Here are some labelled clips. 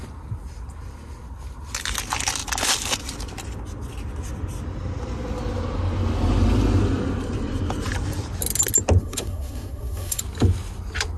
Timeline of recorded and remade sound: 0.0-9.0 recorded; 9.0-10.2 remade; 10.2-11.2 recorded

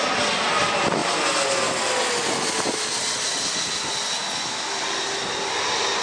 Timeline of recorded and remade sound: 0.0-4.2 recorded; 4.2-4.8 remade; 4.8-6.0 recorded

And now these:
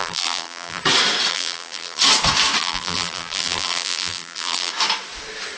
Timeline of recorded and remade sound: 0.0-0.8 remade; 0.8-1.3 recorded; 1.3-2.0 remade; 2.0-2.6 recorded; 2.6-4.7 remade; 4.7-5.6 recorded